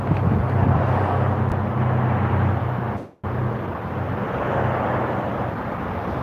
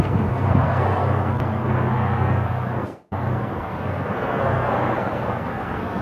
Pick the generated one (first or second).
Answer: second